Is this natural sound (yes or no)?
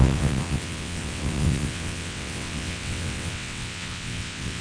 no